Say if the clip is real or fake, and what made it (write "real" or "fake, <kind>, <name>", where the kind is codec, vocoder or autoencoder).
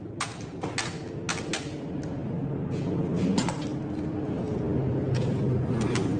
real